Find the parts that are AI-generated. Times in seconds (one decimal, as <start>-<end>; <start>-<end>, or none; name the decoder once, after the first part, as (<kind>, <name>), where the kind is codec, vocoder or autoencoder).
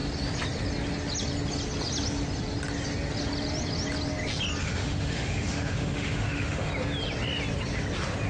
4.6-6.7 (autoencoder, DAC-VAE)